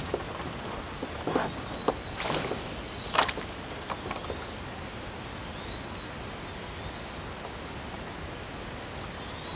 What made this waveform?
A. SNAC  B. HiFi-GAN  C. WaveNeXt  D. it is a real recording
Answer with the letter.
D